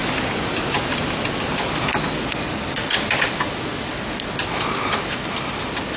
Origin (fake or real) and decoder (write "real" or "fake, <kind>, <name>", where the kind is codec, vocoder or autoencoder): real